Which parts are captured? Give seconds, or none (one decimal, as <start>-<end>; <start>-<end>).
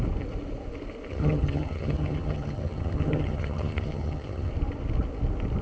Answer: 0.0-1.1; 4.5-5.6